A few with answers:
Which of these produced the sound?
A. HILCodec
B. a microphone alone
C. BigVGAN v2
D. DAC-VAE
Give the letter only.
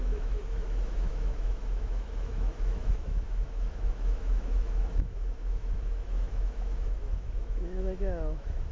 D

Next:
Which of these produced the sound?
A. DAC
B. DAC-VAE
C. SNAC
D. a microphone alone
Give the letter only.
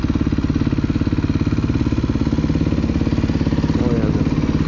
D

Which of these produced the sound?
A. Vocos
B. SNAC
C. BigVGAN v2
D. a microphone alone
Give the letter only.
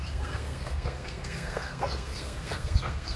B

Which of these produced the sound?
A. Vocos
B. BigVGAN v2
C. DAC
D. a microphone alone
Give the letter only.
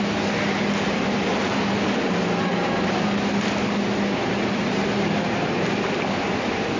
D